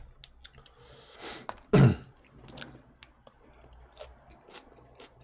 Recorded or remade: recorded